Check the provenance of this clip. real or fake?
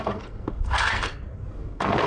fake